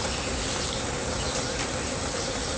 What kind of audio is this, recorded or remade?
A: recorded